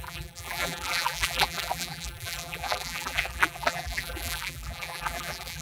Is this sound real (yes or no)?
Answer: no